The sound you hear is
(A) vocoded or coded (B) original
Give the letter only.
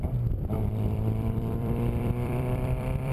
A